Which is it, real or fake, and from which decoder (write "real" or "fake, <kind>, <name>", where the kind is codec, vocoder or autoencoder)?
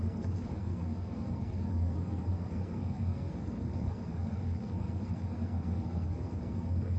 fake, codec, SNAC